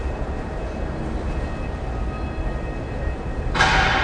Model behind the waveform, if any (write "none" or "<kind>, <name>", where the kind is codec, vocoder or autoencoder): none